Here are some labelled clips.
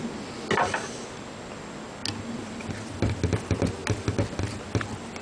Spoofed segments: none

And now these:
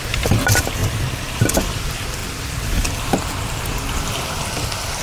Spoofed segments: 2.2-3.1 (vocoder, BigVGAN v2)